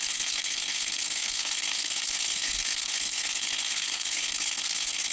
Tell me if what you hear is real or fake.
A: fake